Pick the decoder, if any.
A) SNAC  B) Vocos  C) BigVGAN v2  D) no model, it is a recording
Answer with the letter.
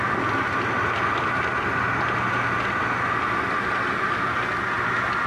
D